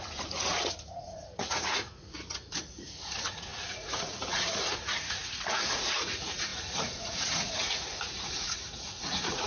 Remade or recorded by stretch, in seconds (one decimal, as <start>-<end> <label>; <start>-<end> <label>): 0.0-9.5 remade